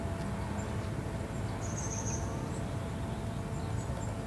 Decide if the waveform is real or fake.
real